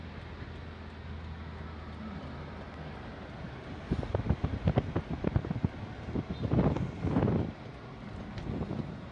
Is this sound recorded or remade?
recorded